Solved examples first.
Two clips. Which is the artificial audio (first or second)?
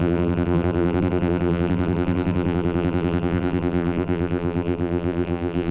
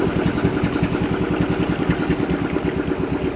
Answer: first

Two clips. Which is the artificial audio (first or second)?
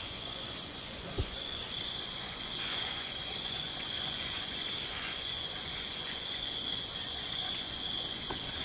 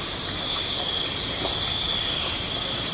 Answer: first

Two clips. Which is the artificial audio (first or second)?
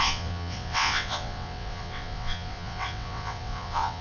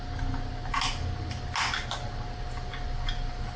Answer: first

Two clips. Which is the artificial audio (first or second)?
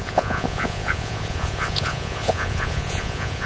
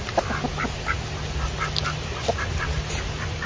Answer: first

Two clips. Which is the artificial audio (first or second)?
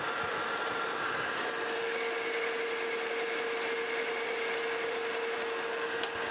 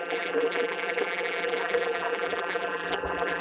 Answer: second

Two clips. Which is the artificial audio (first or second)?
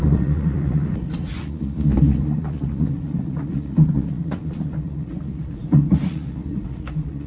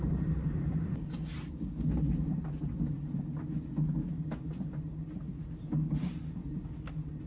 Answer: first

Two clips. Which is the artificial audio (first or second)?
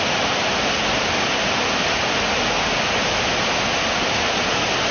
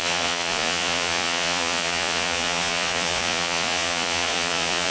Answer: second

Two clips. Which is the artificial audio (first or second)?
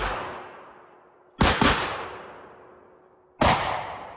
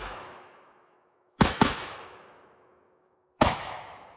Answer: second